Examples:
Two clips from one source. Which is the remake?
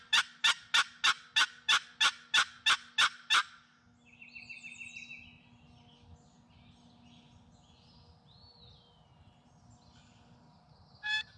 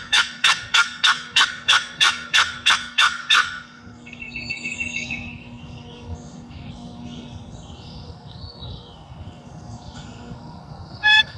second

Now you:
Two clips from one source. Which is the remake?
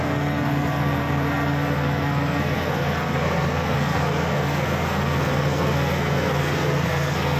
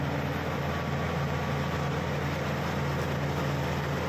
first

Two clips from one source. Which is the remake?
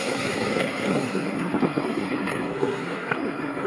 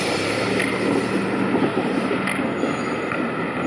first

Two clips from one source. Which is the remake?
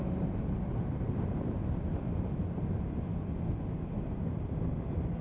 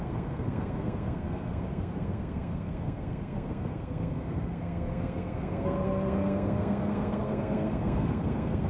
second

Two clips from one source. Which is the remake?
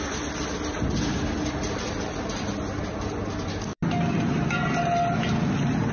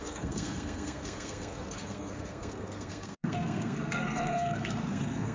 second